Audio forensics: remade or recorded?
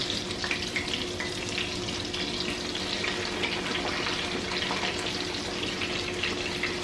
recorded